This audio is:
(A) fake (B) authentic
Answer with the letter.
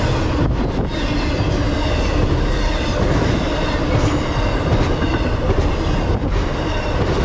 B